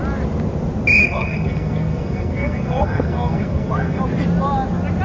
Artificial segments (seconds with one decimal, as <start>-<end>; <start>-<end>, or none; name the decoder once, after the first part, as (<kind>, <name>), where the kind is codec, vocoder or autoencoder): 1.0-4.0 (codec, SNAC)